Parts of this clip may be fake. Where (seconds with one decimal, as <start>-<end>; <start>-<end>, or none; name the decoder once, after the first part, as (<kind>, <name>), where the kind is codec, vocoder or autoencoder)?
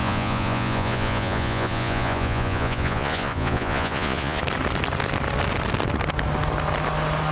0.0-4.4 (vocoder, Vocos)